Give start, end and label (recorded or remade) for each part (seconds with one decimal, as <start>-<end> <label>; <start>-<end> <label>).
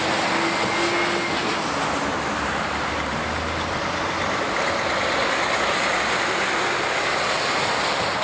0.0-2.1 recorded; 2.1-3.1 remade; 3.1-8.2 recorded